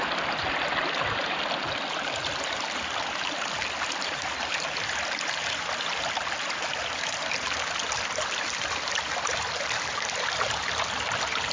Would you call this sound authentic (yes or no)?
yes